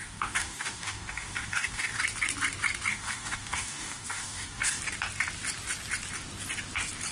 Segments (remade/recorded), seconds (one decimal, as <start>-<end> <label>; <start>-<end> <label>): 0.0-2.0 remade; 2.0-2.9 recorded; 2.9-4.8 remade; 4.8-7.1 recorded